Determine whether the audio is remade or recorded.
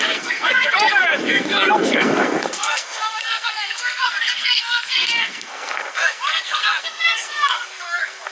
remade